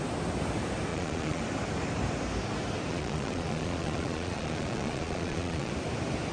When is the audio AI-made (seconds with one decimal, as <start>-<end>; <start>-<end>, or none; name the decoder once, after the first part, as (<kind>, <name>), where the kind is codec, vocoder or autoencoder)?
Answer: 0.9-1.4 (vocoder, Vocos); 2.9-5.7